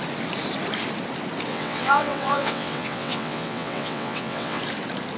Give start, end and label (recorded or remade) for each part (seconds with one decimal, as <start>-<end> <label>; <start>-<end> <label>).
0.0-1.5 recorded; 1.5-4.6 remade; 4.6-5.2 recorded